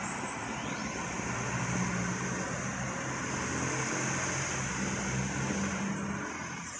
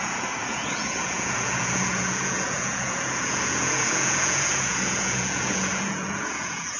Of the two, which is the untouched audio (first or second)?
first